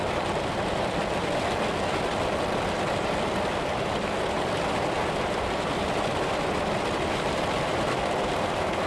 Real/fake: real